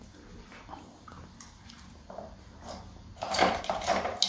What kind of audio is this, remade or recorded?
recorded